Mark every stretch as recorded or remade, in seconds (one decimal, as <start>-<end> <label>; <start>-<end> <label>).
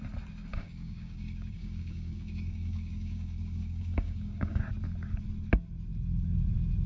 0.0-0.5 recorded; 0.5-4.6 remade; 4.6-6.9 recorded